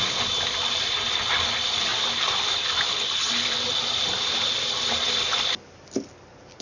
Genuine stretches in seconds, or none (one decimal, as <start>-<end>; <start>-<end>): 0.0-6.6